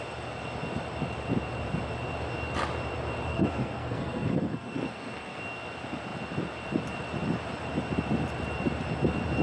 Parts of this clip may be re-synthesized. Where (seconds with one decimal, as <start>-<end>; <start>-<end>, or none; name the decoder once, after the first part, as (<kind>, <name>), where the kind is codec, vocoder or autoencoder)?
3.3-5.4 (codec, SNAC)